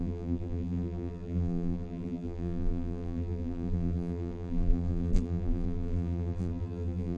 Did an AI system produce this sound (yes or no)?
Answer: yes